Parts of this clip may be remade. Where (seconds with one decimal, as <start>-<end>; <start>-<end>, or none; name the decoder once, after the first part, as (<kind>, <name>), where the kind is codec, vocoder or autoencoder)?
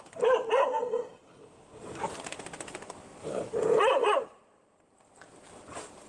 0.0-6.1 (vocoder, BigVGAN v2)